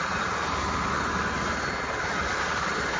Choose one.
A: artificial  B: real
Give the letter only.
B